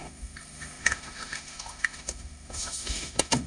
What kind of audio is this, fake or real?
fake